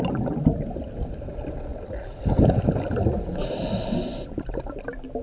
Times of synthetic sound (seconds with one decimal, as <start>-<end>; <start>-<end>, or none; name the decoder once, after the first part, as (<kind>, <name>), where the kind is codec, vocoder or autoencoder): none